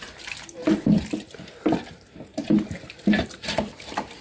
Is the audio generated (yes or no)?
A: no